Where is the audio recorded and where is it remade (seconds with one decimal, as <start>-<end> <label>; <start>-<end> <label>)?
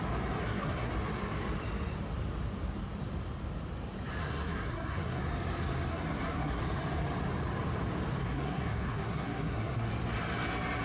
0.0-0.4 recorded; 0.4-0.9 remade; 0.9-4.2 recorded; 4.2-5.2 remade; 5.2-5.9 recorded; 5.9-6.6 remade; 6.6-8.2 recorded; 8.2-9.9 remade; 9.9-10.8 recorded